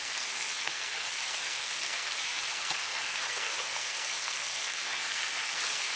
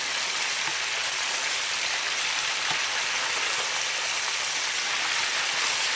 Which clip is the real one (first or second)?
second